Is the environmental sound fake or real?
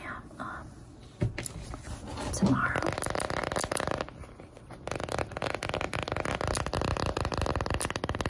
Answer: real